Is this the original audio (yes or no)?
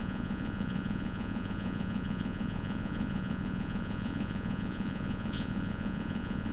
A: no